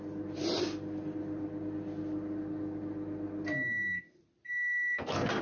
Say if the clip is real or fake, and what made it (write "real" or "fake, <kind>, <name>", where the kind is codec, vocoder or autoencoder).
real